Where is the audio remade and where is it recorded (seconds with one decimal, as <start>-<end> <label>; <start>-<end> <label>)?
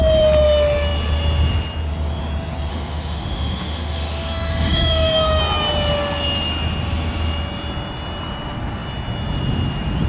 0.0-2.7 recorded; 2.7-5.4 remade; 5.4-10.1 recorded